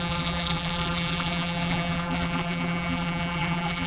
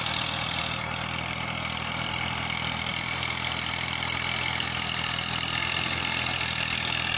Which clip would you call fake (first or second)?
first